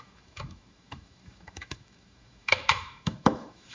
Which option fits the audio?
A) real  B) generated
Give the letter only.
B